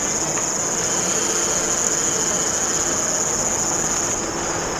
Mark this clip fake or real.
real